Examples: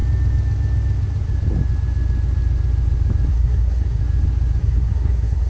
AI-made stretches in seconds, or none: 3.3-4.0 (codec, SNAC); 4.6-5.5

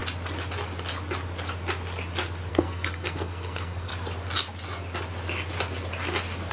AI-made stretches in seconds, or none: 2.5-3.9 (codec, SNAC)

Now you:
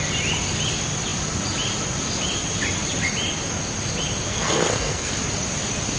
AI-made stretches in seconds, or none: 4.3-5.2 (codec, SNAC)